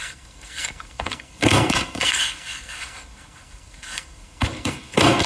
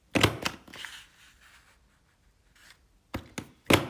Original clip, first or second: second